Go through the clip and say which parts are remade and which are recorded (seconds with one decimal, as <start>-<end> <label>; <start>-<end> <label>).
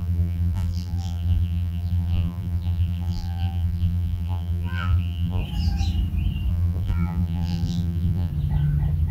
0.0-5.4 remade; 5.4-6.5 recorded; 6.5-8.3 remade; 8.3-9.1 recorded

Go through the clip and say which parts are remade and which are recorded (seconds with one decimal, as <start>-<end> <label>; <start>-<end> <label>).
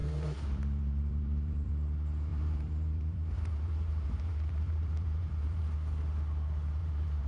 0.0-1.7 remade; 1.7-2.3 recorded; 2.3-5.6 remade; 5.6-6.8 recorded; 6.8-7.3 remade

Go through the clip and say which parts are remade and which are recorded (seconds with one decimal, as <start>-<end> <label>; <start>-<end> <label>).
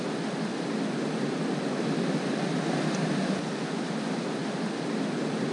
0.0-4.4 recorded; 4.4-5.5 remade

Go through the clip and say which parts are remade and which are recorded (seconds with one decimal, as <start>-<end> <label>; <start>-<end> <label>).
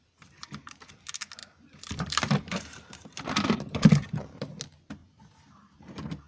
0.0-0.4 recorded; 0.4-0.9 remade; 0.9-1.4 recorded; 1.4-4.5 remade; 4.5-5.0 recorded; 5.0-6.3 remade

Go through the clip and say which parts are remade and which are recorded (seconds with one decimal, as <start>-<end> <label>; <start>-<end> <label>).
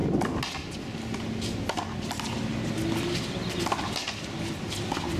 0.0-2.1 recorded; 2.1-2.5 remade; 2.5-4.1 recorded; 4.1-5.2 remade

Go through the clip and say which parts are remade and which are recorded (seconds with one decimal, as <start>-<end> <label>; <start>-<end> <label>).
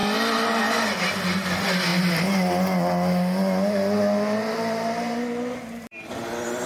0.0-0.6 remade; 0.6-4.5 recorded; 4.5-6.1 remade; 6.1-6.7 recorded